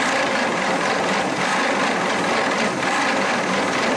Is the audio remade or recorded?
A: recorded